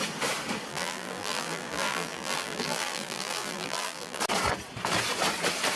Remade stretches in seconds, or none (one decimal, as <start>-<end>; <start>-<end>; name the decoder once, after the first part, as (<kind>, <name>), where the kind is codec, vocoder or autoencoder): 0.7-4.2 (vocoder, BigVGAN v2)